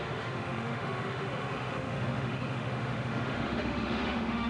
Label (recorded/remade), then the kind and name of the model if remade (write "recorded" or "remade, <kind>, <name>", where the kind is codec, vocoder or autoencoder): remade, autoencoder, DAC-VAE